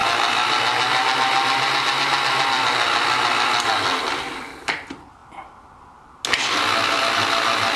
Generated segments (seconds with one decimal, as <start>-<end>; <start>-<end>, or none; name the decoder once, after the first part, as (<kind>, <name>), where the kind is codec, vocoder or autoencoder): none